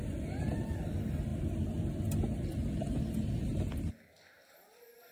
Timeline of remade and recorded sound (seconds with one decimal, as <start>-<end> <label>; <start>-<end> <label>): 0.0-3.5 remade; 3.5-4.3 recorded; 4.3-5.1 remade